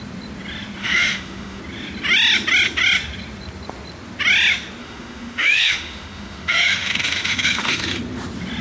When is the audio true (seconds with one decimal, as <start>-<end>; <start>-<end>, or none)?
0.0-0.8; 1.6-4.8; 8.0-8.6